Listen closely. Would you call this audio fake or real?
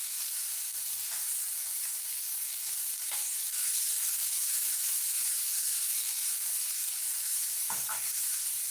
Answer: fake